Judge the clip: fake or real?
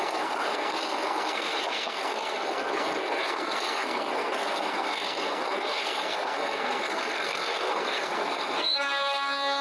fake